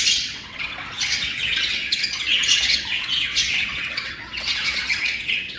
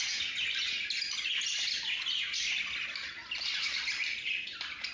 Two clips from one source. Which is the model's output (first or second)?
first